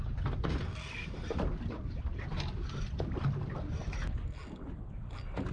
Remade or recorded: recorded